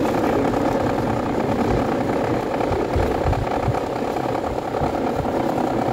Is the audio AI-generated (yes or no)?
no